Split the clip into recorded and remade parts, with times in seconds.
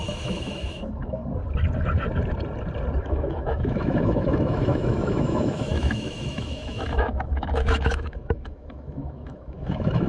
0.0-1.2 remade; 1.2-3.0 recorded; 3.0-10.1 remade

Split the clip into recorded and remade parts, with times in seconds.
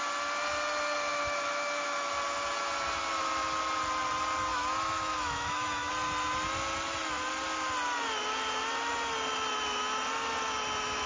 0.0-1.1 recorded; 1.1-2.1 remade; 2.1-4.5 recorded; 4.5-5.9 remade; 5.9-11.1 recorded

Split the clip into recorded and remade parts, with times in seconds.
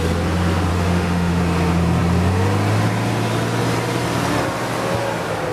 0.0-0.7 recorded; 0.7-1.4 remade; 1.4-5.5 recorded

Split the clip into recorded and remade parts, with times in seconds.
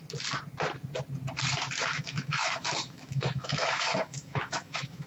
0.0-1.9 recorded; 1.9-5.1 remade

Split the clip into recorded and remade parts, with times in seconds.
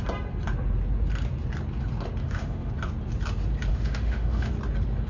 0.0-2.2 recorded; 2.2-2.7 remade; 2.7-3.7 recorded; 3.7-4.5 remade; 4.5-5.1 recorded